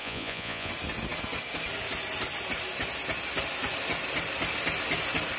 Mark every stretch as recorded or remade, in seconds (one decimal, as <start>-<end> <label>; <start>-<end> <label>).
0.0-0.7 remade; 0.7-5.4 recorded

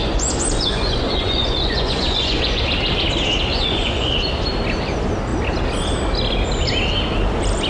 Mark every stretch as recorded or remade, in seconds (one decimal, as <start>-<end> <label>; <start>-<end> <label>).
0.0-2.6 remade; 2.6-3.5 recorded; 3.5-4.1 remade; 4.1-7.7 recorded

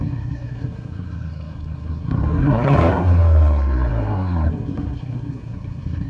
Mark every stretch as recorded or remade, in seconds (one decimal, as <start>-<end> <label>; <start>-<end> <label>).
0.0-6.1 remade

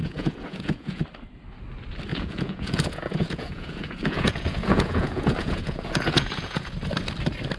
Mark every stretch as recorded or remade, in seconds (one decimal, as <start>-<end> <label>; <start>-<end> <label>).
0.0-1.0 remade; 1.0-2.1 recorded; 2.1-6.7 remade; 6.7-7.6 recorded

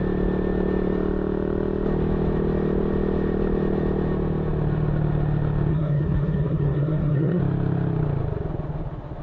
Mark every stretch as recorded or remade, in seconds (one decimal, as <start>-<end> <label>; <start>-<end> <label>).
0.0-5.7 recorded; 5.7-7.4 remade; 7.4-9.2 recorded